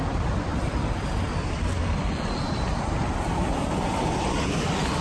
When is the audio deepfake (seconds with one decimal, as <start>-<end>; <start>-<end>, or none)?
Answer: 0.0-5.0